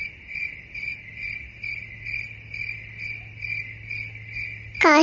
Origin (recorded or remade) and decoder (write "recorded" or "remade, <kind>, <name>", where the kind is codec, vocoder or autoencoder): recorded